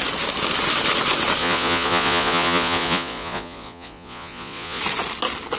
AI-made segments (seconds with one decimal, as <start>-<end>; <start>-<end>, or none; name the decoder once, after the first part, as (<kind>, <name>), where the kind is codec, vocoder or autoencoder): 1.4-4.8 (vocoder, Vocos)

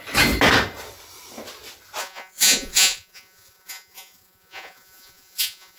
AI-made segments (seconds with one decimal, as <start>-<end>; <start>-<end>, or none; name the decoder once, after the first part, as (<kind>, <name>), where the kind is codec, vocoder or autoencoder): 2.0-5.8 (vocoder, Vocos)

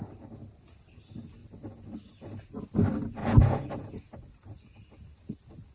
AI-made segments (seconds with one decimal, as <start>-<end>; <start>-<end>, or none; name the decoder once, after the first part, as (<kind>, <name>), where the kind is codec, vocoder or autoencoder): 3.2-4.1 (vocoder, Vocos)

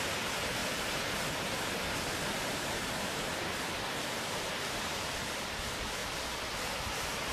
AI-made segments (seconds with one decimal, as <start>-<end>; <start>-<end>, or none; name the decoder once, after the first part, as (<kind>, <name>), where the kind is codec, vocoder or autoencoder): none

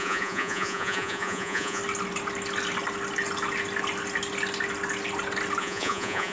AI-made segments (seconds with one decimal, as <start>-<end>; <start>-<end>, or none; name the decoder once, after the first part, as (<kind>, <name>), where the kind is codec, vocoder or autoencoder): 0.0-1.8 (vocoder, Vocos); 5.6-6.3

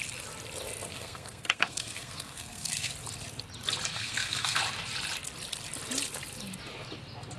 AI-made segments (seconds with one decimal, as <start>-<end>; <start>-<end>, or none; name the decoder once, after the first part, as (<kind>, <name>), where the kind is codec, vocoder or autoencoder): 0.9-2.9 (codec, SNAC); 3.9-4.6

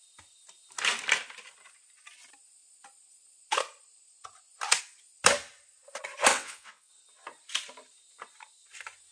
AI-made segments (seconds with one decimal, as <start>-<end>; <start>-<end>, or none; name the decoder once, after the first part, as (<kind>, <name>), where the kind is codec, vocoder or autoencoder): 6.3-6.9 (vocoder, WaveNeXt)